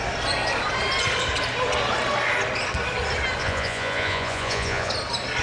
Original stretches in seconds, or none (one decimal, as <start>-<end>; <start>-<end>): 0.0-3.4; 4.9-5.4